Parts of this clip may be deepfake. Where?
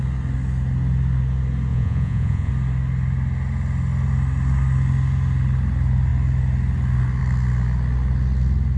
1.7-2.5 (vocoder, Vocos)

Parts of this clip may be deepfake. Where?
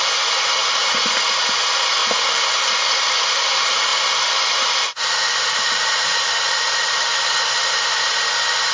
none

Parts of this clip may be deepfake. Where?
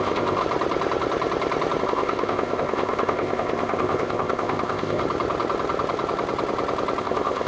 0.0-0.4 (codec, ZipCodec); 1.8-5.0; 7.0-7.5